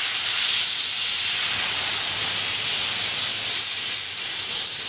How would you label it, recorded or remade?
recorded